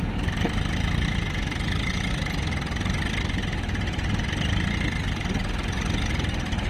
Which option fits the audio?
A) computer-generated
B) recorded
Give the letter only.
B